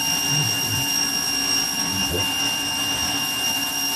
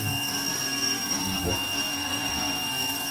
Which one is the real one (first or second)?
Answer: first